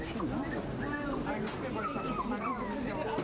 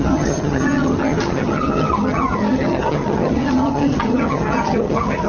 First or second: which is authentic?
first